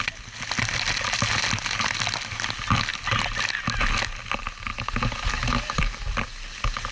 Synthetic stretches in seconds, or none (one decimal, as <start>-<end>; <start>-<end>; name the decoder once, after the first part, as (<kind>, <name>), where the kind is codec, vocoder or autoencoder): none